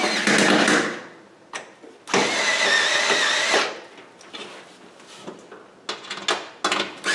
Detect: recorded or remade recorded